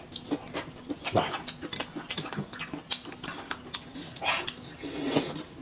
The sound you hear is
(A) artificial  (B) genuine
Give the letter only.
B